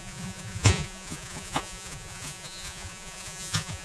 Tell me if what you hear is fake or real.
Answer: fake